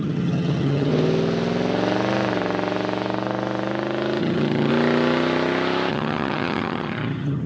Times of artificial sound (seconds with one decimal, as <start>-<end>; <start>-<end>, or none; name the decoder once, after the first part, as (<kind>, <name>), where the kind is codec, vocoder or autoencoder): 0.0-0.9 (vocoder, HiFi-GAN); 4.2-4.7; 5.9-7.5